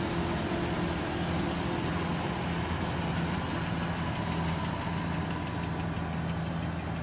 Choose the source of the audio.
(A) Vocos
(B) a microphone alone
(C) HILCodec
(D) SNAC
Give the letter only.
B